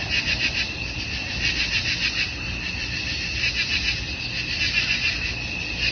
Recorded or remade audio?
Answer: recorded